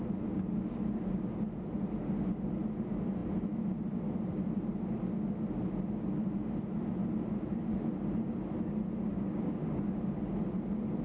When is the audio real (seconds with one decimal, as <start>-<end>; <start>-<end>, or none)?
0.0-9.1; 9.8-11.0

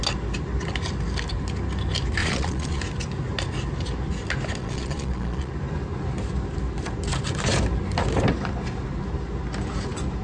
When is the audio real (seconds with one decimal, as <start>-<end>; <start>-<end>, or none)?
0.0-2.2; 2.8-4.6; 5.5-10.2

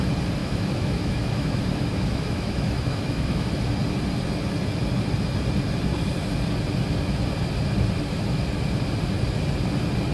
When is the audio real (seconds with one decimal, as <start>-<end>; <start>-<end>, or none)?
0.0-0.4; 3.5-10.1